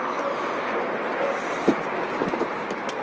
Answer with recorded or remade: recorded